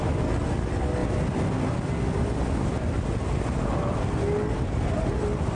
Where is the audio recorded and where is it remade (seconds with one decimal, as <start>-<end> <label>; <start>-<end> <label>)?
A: 0.0-5.6 recorded